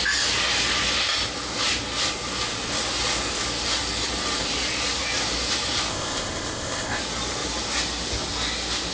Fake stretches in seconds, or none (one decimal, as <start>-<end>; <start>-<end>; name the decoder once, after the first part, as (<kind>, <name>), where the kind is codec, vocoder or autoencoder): 5.9-7.0 (codec, ZipCodec)